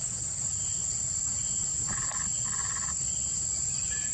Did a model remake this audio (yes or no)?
no